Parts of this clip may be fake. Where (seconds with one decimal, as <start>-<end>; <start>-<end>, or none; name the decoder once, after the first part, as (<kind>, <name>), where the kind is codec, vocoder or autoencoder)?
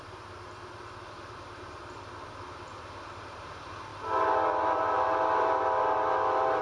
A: none